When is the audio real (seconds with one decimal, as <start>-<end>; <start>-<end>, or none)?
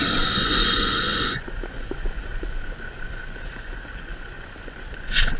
none